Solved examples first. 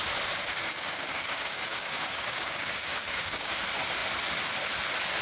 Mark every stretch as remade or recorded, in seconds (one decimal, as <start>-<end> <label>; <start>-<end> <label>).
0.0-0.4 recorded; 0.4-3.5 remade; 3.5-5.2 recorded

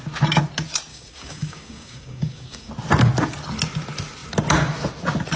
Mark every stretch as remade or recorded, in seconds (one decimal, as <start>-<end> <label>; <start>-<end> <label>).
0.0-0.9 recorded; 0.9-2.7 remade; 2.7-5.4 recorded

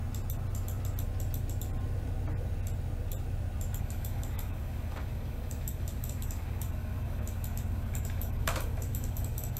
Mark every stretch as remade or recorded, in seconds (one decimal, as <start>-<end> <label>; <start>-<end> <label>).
0.0-3.8 recorded; 3.8-9.6 remade